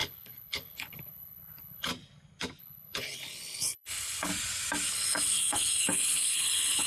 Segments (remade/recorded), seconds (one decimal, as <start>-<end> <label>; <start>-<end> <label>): 0.0-1.9 remade; 1.9-2.6 recorded; 2.6-4.3 remade; 4.3-4.9 recorded; 4.9-6.9 remade